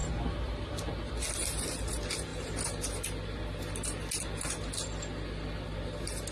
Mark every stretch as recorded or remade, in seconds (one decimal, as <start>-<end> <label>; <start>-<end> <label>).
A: 0.0-6.3 recorded